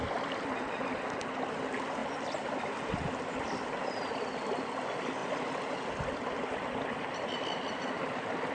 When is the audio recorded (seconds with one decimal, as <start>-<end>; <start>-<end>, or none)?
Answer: 0.0-2.0; 4.6-8.5